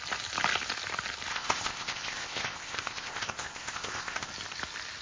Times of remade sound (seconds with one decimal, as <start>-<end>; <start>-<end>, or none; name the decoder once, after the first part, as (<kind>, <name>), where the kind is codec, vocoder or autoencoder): 1.3-4.3 (codec, ZipCodec)